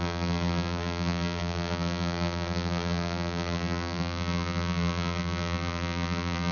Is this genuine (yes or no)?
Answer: no